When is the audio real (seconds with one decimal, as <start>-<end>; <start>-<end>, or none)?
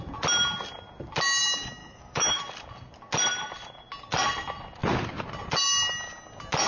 0.0-1.8; 2.4-6.7